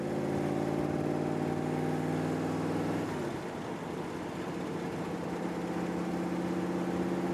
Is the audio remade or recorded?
recorded